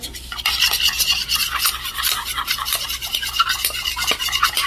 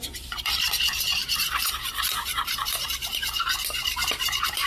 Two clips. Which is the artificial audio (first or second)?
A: second